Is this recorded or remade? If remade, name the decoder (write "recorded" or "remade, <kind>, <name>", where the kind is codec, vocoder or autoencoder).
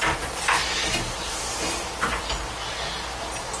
recorded